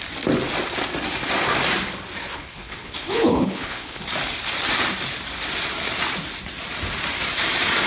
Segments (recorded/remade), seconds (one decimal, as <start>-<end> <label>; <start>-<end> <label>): 0.0-2.2 recorded; 2.2-4.0 remade; 4.0-7.9 recorded